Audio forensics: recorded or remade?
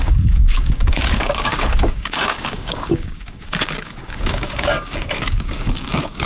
remade